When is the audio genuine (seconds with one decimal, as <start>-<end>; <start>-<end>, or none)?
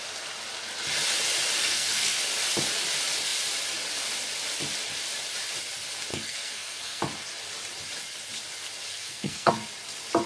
0.0-1.6; 2.2-6.1; 7.0-8.9; 9.5-10.3